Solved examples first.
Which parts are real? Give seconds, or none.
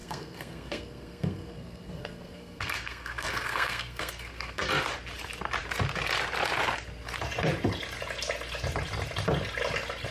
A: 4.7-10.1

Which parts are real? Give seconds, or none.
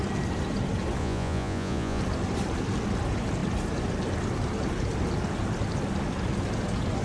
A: 0.0-1.0; 2.0-7.0